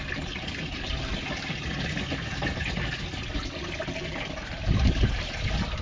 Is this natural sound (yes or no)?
no